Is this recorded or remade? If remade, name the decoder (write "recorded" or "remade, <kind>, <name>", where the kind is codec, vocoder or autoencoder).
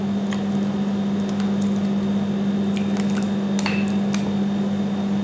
recorded